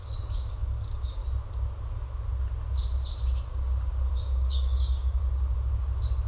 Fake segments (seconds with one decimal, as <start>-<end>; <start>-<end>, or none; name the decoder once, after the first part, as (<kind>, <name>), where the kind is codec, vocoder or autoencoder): 0.0-1.2 (codec, DAC); 4.1-5.2